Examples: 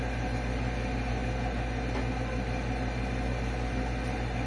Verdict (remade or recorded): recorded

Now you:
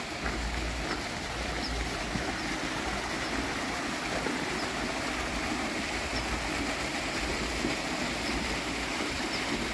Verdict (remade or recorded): recorded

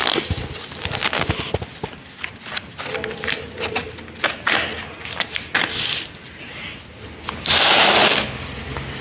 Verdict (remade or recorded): recorded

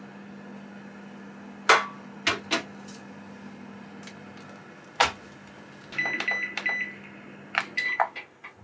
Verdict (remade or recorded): recorded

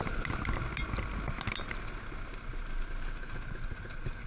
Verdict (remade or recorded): recorded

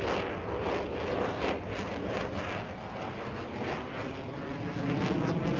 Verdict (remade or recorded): recorded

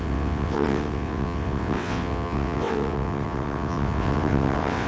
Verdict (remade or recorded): remade